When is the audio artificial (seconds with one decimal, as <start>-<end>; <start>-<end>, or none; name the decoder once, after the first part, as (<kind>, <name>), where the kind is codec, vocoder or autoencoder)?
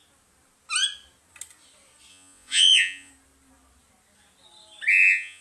2.1-3.1 (vocoder, Vocos); 4.9-5.4